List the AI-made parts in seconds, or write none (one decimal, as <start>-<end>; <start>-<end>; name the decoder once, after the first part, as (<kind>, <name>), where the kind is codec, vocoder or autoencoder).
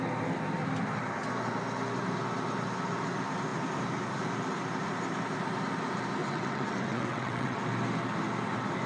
6.2-7.6 (vocoder, WaveNeXt)